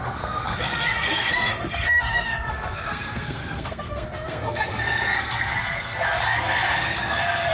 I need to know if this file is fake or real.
fake